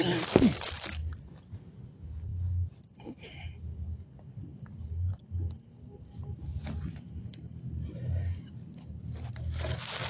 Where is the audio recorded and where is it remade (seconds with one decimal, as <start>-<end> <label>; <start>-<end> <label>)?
0.0-10.1 recorded